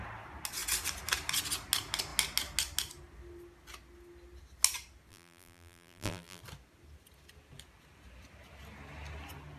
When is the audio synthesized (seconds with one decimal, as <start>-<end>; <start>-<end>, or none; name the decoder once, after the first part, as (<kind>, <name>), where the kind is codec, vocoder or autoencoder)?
5.1-6.4 (vocoder, BigVGAN v2)